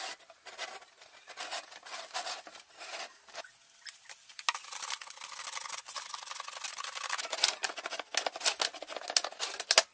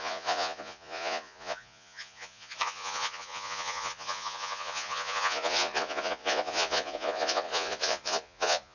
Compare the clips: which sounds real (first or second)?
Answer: first